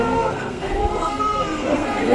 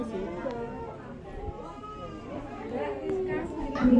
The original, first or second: second